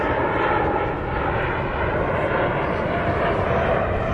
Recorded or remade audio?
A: recorded